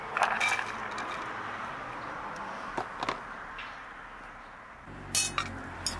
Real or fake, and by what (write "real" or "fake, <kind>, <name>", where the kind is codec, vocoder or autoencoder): real